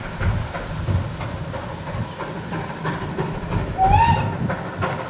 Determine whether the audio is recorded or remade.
recorded